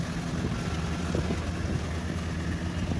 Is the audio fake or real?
real